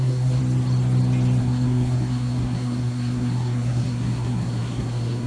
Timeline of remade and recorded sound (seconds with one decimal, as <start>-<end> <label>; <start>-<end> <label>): 0.0-0.4 remade; 0.4-1.4 recorded; 1.4-5.3 remade